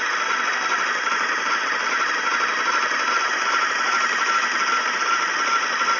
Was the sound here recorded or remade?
recorded